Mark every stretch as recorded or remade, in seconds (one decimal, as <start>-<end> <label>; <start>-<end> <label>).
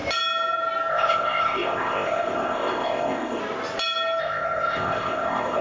0.0-0.9 recorded; 0.9-3.4 remade; 3.4-4.2 recorded; 4.2-5.6 remade